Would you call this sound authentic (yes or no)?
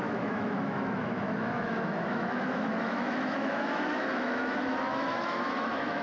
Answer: no